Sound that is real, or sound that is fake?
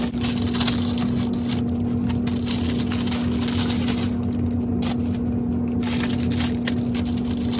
real